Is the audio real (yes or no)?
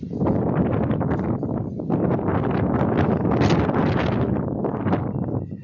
yes